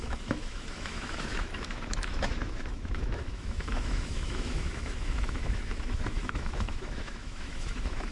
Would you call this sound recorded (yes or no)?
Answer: no